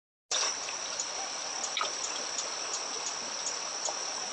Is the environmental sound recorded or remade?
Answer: recorded